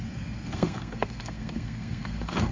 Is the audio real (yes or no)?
no